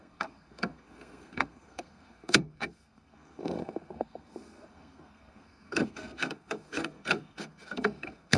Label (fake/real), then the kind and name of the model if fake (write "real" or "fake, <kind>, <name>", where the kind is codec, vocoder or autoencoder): fake, codec, SNAC